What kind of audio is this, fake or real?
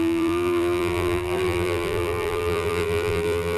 fake